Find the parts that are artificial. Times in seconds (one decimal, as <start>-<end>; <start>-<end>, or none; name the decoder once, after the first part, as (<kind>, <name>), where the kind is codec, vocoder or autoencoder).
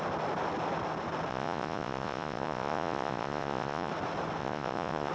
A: 1.3-3.9 (vocoder, Vocos); 4.4-5.1